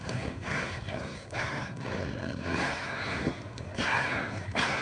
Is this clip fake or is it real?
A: fake